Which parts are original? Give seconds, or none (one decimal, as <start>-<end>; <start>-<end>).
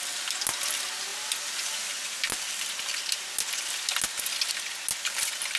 0.0-5.6